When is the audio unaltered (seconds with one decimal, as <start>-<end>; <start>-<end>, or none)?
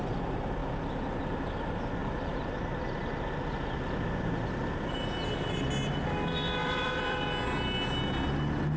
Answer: 0.0-6.6; 7.3-8.8